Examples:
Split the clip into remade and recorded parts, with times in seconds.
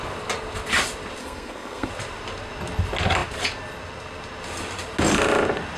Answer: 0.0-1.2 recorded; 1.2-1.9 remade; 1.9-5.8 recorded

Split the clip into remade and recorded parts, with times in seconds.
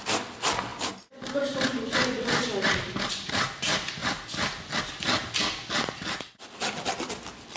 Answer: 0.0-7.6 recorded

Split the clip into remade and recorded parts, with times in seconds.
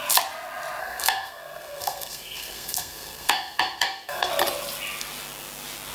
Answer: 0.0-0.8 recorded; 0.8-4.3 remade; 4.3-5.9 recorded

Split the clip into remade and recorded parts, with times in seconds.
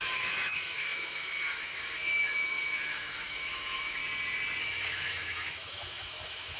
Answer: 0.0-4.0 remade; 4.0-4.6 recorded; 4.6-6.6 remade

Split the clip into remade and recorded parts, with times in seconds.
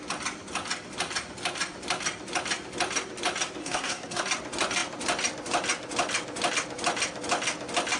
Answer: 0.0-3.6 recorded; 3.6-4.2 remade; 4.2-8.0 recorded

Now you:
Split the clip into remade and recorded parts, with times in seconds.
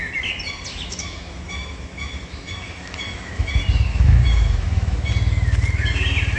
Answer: 0.0-0.7 recorded; 0.7-3.5 remade; 3.5-3.9 recorded; 3.9-5.1 remade; 5.1-6.4 recorded